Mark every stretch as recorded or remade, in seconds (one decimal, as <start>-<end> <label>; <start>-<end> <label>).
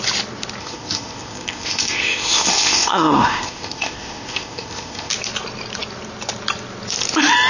0.0-0.6 recorded; 0.6-5.1 remade; 5.1-7.5 recorded